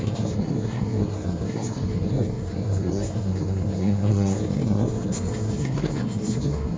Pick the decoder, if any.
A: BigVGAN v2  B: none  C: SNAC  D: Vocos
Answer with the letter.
C